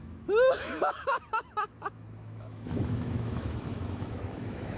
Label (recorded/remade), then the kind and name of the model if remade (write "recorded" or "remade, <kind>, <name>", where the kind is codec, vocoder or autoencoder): remade, autoencoder, DAC-VAE